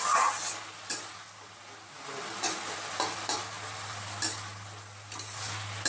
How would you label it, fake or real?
real